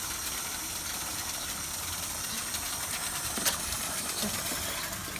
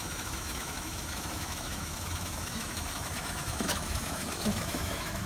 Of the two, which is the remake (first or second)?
second